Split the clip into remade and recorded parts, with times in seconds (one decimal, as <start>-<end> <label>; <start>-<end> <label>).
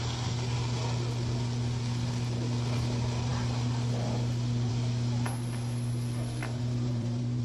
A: 0.0-6.4 recorded; 6.4-7.4 remade